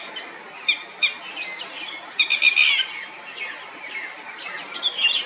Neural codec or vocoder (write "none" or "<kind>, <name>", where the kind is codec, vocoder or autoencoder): none